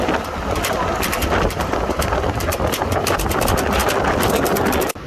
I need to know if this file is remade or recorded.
recorded